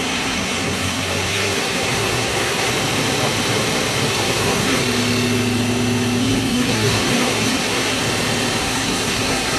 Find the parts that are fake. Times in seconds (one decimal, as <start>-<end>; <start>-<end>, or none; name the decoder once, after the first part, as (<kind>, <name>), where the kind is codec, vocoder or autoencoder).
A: 0.0-2.7 (codec, SNAC); 4.1-4.8; 6.2-8.0; 8.6-9.6